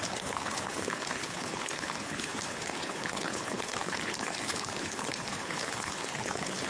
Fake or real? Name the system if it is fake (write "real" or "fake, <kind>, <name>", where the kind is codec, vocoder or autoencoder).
fake, codec, HILCodec